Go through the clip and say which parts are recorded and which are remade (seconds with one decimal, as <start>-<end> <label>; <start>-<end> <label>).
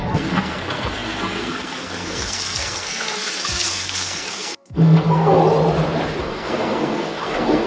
0.0-5.4 remade; 5.4-6.2 recorded; 6.2-7.7 remade